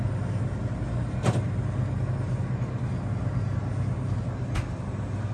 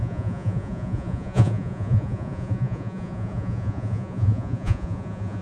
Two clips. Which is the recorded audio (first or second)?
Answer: first